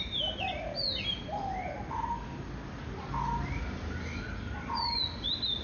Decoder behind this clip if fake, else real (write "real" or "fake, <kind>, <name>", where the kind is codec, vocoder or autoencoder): real